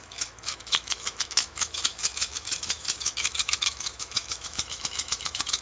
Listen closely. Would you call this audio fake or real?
fake